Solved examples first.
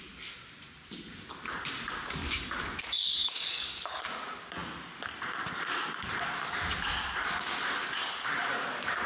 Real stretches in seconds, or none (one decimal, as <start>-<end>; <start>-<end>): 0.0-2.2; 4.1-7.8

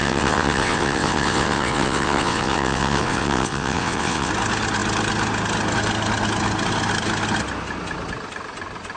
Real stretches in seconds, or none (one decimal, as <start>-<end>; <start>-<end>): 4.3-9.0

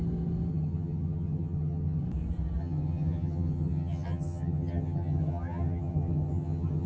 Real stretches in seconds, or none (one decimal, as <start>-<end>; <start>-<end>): 0.0-0.5; 2.0-2.6

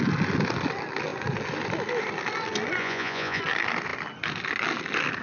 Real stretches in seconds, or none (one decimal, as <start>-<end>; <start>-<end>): 0.0-2.8; 3.4-5.2